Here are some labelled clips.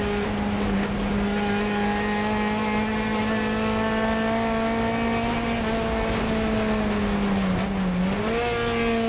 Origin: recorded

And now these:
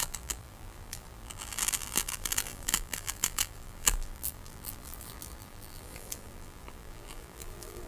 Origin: remade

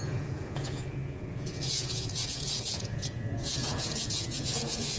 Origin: remade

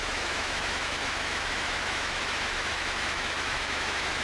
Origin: remade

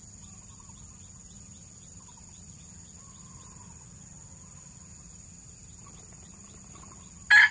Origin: recorded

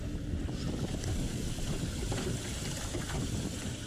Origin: remade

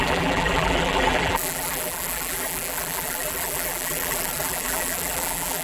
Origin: remade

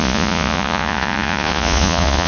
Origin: remade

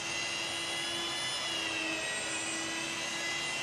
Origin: recorded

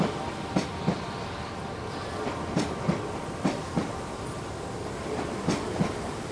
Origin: recorded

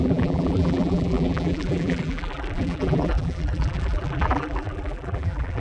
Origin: remade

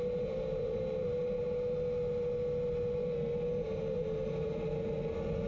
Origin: recorded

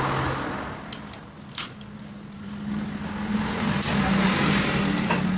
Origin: recorded